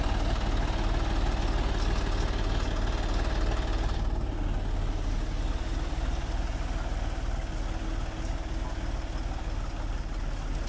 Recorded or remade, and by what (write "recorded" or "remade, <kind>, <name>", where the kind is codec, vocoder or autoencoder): recorded